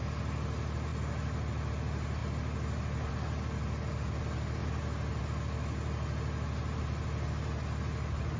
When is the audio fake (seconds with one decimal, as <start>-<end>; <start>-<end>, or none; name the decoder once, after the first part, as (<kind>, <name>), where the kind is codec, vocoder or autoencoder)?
none